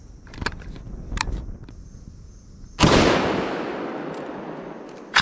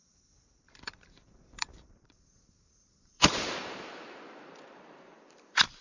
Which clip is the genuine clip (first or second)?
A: first